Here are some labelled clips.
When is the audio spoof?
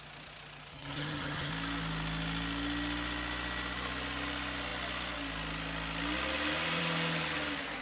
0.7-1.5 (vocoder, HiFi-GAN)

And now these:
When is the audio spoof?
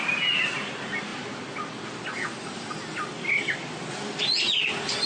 none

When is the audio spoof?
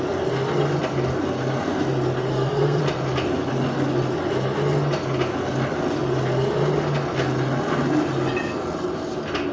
2.3-2.8 (codec, SNAC)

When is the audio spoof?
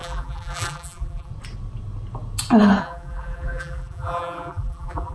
0.0-1.3 (vocoder, BigVGAN v2); 2.8-5.1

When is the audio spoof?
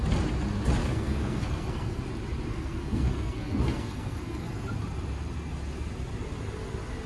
0.8-2.0 (codec, SNAC); 2.5-4.7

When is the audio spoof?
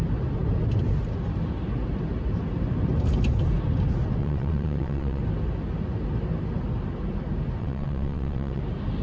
4.2-5.2 (vocoder, WaveNeXt); 7.6-8.6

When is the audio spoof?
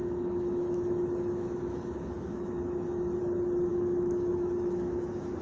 0.0-3.2 (autoencoder, DAC-VAE); 3.7-5.4